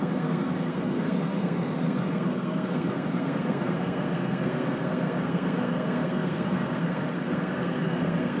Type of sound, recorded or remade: remade